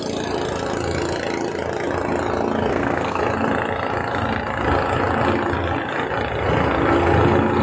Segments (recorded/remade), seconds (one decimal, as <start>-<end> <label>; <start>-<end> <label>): 0.0-2.7 recorded; 2.7-3.2 remade; 3.2-7.6 recorded